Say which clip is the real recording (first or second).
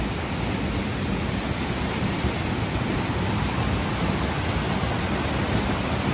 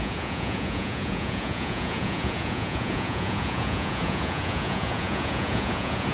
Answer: first